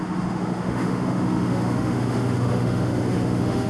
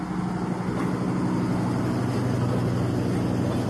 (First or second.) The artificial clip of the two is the first